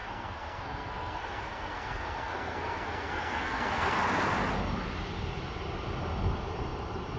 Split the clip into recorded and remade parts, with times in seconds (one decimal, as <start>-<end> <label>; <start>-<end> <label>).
0.0-4.0 remade; 4.0-7.2 recorded